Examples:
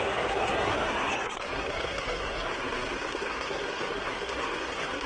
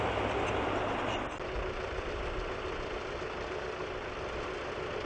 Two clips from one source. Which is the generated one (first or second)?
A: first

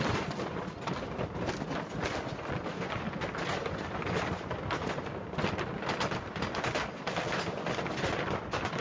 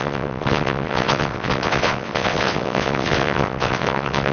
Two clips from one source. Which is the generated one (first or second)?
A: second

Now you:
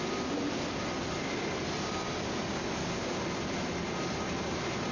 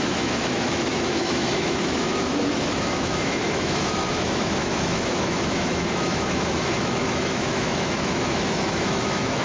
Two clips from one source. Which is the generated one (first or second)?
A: second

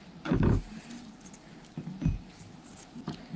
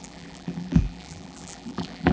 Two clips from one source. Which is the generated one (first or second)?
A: second